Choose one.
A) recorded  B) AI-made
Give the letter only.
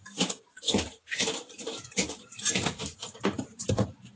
B